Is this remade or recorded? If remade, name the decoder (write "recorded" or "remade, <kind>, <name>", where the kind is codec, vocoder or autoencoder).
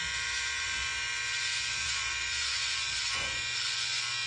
remade, vocoder, Vocos